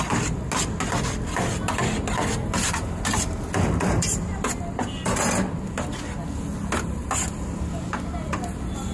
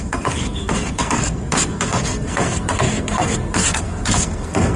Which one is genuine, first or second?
first